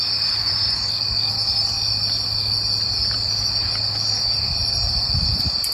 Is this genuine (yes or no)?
yes